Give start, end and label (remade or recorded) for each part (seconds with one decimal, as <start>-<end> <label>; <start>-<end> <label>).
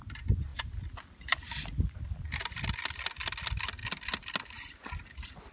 0.0-5.5 recorded